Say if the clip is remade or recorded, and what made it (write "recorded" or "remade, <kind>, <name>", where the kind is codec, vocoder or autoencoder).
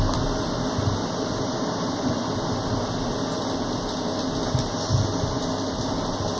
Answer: recorded